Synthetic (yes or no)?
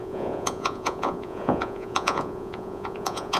yes